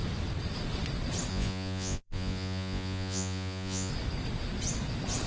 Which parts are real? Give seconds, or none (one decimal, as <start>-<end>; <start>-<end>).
0.0-1.3; 3.9-5.3